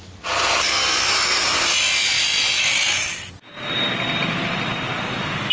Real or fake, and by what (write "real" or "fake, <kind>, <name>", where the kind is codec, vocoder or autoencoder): real